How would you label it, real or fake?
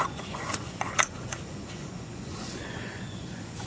fake